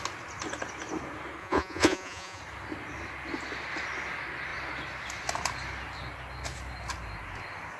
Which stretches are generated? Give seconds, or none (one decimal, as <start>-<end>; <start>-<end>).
1.4-2.4